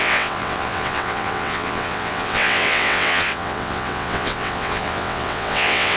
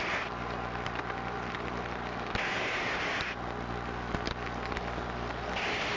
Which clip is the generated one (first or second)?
first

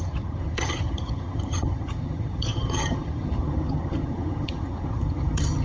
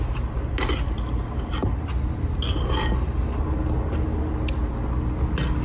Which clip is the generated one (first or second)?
first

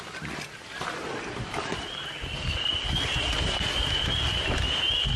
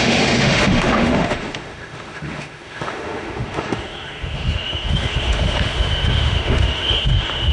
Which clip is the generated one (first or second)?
second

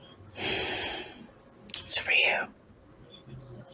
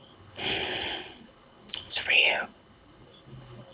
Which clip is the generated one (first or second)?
second